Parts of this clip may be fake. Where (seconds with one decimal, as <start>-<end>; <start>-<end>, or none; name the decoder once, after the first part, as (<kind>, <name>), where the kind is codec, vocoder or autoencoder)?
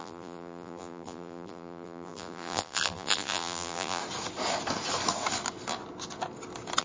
0.0-4.0 (vocoder, BigVGAN v2)